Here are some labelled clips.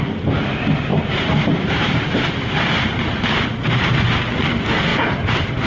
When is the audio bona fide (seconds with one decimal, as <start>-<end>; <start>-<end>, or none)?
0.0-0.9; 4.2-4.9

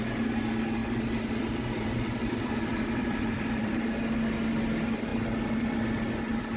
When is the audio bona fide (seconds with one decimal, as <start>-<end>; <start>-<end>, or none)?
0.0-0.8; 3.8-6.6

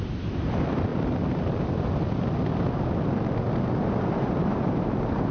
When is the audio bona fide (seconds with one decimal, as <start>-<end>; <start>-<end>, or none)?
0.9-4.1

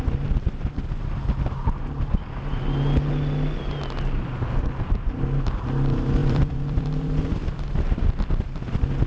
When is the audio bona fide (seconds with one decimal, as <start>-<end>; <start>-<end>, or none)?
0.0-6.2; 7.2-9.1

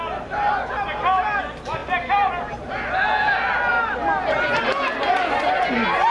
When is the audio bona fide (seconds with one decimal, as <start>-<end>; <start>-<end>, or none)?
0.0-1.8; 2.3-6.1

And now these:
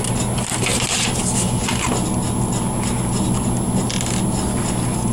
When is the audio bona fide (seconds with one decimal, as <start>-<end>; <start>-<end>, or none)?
0.0-5.1

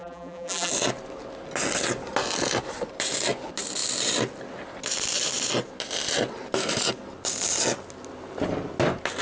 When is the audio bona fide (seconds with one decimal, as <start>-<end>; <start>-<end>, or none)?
0.7-9.2

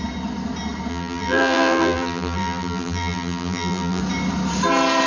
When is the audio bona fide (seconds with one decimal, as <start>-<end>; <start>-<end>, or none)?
0.0-0.9; 4.0-5.1